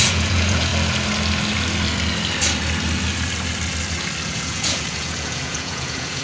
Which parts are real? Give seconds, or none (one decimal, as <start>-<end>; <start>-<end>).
0.7-4.3